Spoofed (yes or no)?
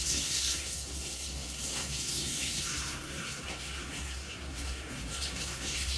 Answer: yes